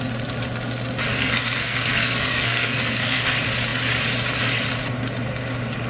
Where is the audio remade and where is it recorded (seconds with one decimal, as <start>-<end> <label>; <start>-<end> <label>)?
0.0-1.1 recorded; 1.1-3.2 remade; 3.2-5.9 recorded